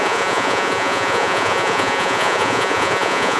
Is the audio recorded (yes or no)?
no